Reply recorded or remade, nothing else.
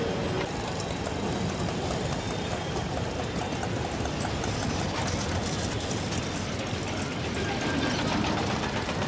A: recorded